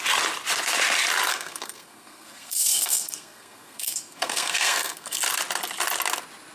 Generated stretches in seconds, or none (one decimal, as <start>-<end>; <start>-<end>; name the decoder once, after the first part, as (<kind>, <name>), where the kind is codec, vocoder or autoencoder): 1.3-5.2 (codec, SNAC)